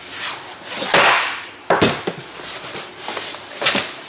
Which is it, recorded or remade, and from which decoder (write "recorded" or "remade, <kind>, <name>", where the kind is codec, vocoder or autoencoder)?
recorded